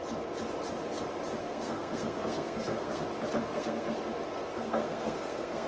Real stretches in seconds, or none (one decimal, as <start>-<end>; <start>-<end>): 0.0-1.4; 3.0-3.4; 4.0-4.5